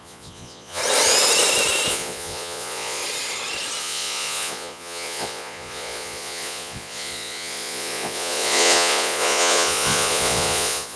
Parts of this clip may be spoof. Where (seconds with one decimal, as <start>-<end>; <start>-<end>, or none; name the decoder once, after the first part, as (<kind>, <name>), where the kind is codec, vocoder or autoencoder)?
0.0-0.8 (vocoder, Vocos); 1.9-3.0; 3.8-11.0